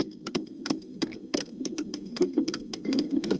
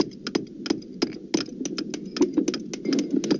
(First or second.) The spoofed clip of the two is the first